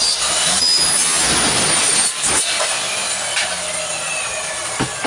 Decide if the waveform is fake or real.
real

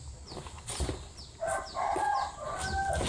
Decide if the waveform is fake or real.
real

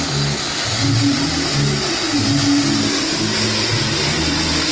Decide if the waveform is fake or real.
real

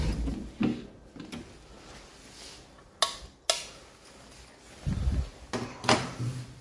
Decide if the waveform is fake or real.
real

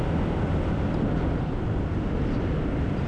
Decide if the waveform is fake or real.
real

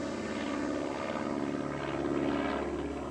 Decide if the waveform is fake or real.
real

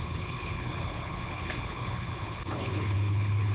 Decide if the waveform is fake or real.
fake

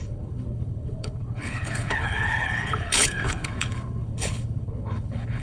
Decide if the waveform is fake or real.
fake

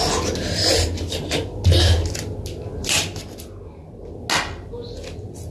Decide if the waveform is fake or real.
real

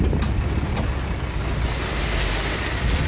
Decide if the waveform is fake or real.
real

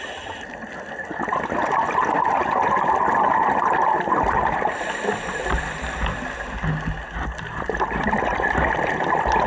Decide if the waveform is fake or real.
real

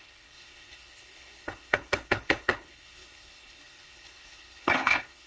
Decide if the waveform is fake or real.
fake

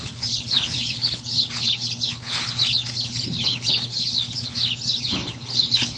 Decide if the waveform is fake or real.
fake